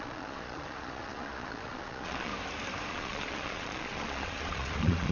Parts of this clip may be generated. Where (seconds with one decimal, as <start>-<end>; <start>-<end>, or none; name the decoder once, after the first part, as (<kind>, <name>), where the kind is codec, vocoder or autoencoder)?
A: 0.0-2.3 (vocoder, Vocos); 2.9-5.1